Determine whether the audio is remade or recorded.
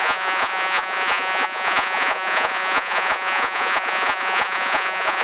remade